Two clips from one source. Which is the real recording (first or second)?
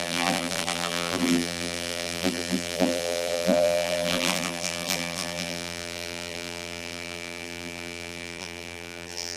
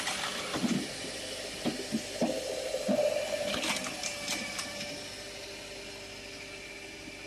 second